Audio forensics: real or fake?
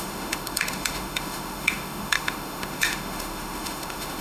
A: fake